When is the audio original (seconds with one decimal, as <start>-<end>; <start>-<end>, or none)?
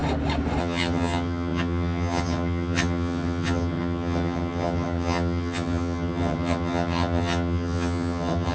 0.0-0.6